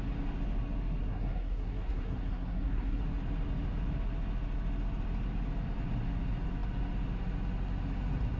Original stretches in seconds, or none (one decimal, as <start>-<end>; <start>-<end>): 0.0-1.0; 3.0-8.4